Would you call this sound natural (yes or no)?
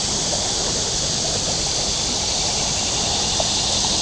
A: yes